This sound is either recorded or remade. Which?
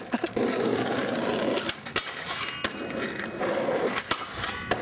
recorded